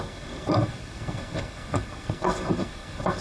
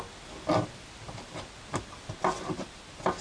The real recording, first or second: second